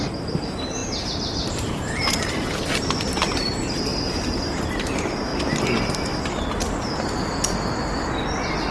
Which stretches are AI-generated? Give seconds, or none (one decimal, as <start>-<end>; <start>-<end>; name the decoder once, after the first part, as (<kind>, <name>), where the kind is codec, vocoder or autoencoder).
0.0-5.3 (vocoder, BigVGAN v2)